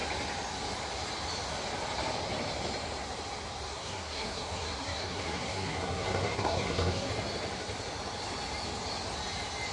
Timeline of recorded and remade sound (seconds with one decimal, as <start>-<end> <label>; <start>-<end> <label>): 0.0-3.7 recorded; 3.7-7.1 remade; 7.1-9.7 recorded